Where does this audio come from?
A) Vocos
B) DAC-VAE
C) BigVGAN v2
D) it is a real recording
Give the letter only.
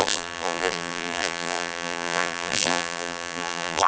C